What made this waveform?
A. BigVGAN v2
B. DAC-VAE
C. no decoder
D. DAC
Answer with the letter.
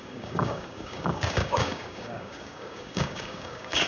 D